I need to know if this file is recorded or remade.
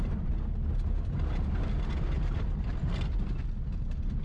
recorded